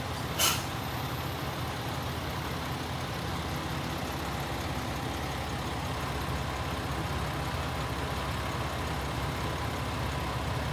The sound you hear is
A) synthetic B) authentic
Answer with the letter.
B